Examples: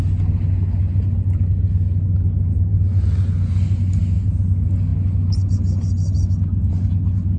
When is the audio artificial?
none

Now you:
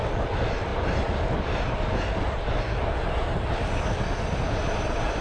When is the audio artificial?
none

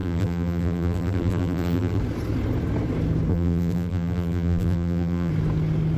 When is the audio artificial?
0.0-2.0 (vocoder, BigVGAN v2); 3.3-5.3

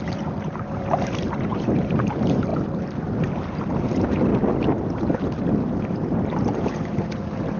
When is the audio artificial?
0.0-4.3 (vocoder, BigVGAN v2); 5.8-7.6

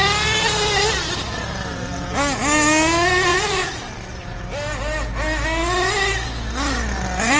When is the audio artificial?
3.3-4.4 (vocoder, BigVGAN v2)

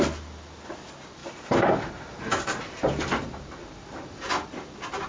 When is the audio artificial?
1.2-4.3 (vocoder, BigVGAN v2)

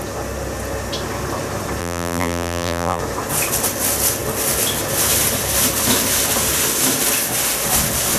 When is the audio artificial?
1.8-3.0 (vocoder, BigVGAN v2)